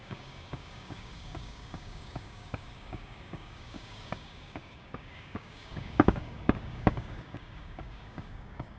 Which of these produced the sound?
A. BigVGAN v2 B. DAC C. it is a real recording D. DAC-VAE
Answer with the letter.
B